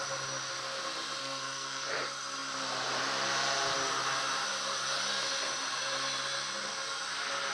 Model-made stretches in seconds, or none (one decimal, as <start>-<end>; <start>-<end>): 1.2-1.9